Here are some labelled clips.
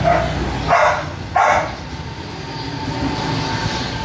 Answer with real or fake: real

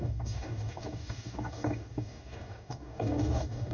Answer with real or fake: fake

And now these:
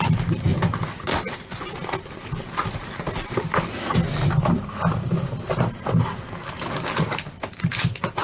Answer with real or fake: real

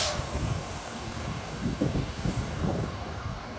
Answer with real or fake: fake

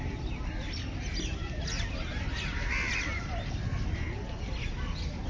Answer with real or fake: real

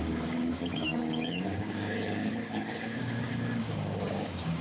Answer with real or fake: fake